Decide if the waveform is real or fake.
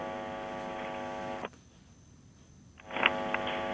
real